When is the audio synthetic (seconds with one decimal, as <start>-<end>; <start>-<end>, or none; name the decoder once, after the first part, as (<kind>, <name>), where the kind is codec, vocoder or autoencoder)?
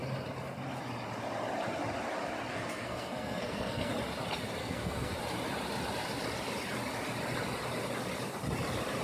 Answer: 2.5-3.9 (codec, SNAC); 4.6-5.2